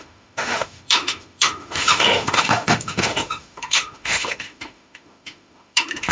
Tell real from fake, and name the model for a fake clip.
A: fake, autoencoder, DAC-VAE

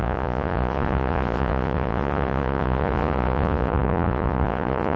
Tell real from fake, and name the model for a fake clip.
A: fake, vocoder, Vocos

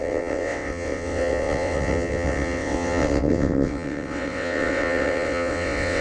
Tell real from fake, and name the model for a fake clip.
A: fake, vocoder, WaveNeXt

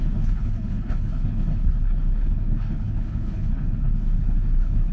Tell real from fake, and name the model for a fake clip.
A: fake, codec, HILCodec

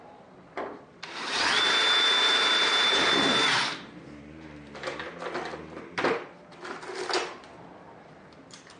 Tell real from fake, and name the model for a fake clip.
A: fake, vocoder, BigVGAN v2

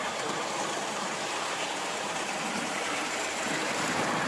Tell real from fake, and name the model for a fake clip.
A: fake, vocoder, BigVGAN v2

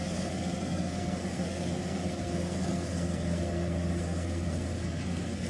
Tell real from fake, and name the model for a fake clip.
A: fake, codec, SNAC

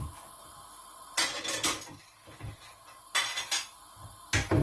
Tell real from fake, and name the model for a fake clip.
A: real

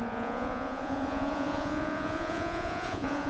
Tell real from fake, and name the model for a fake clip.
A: fake, vocoder, Vocos